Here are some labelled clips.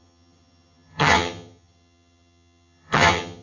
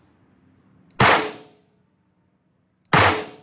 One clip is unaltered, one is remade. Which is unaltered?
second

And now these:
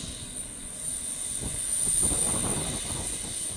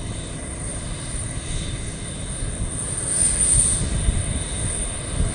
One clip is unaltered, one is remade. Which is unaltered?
second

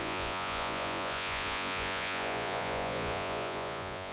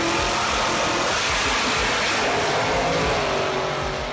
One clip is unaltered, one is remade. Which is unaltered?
second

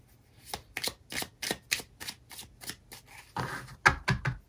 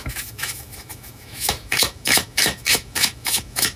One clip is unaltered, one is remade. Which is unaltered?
first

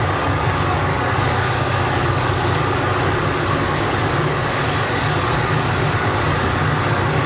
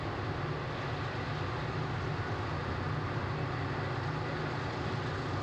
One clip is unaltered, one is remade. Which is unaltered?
second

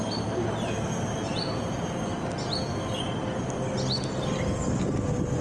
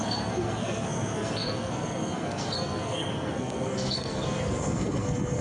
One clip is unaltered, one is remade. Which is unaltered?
first